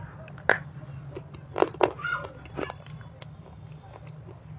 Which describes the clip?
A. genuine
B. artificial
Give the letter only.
A